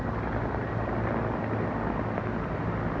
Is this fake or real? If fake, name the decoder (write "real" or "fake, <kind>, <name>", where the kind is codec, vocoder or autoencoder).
real